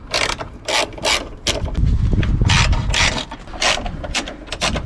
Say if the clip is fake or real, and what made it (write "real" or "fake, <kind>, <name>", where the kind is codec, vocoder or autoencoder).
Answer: real